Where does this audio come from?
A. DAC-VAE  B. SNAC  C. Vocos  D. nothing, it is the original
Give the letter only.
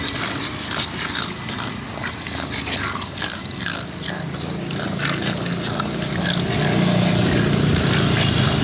D